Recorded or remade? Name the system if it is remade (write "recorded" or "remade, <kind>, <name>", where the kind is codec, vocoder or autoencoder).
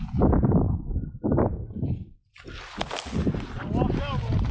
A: recorded